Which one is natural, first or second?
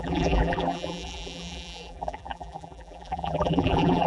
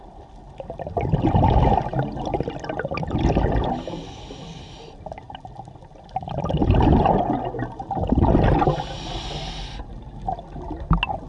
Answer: second